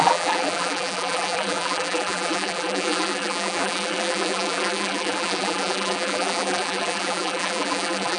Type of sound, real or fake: fake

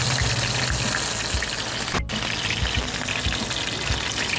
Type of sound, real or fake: real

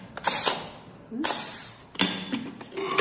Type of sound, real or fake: real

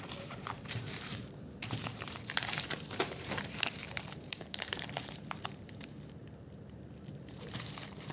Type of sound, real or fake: fake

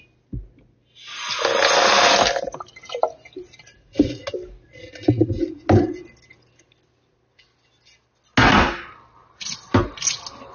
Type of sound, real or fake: real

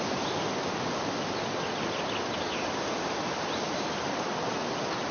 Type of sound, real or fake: real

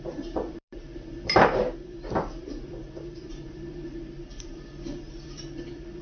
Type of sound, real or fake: fake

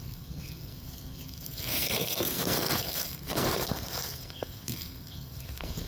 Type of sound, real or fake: fake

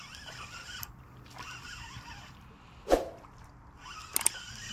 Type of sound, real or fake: real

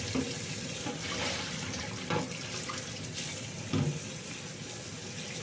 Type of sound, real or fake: real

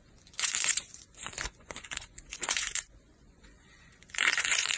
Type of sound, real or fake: fake